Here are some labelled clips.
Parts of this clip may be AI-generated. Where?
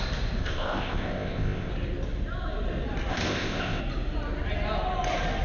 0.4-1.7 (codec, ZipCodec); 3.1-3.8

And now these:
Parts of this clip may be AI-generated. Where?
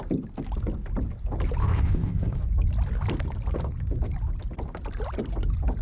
1.6-2.4 (codec, ZipCodec)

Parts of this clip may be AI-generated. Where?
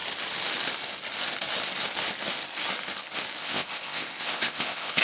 3.4-5.0 (codec, ZipCodec)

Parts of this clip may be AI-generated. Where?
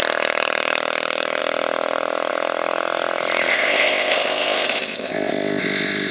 3.5-6.1 (codec, ZipCodec)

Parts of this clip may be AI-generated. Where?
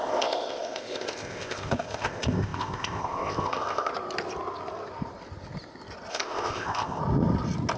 0.0-3.9 (codec, ZipCodec); 6.1-7.0